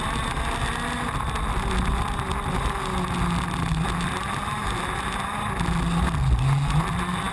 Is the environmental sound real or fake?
real